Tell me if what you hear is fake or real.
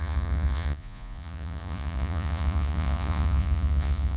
fake